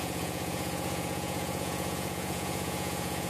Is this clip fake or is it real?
fake